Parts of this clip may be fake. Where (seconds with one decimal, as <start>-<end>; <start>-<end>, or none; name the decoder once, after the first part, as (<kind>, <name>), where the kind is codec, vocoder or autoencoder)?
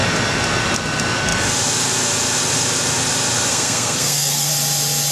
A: 3.5-4.5 (codec, SNAC)